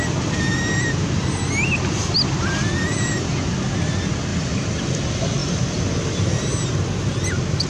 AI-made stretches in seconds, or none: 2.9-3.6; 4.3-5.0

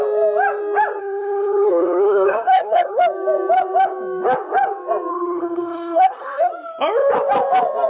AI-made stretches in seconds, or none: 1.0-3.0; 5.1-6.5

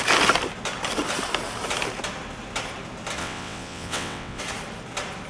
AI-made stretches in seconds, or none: 3.2-4.4

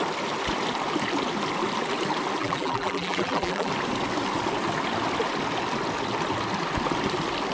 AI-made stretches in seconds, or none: 2.4-3.7

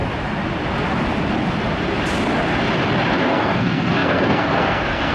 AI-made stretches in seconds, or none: 3.1-5.1

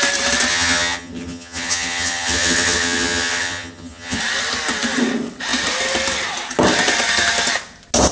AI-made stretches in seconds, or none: 0.5-4.2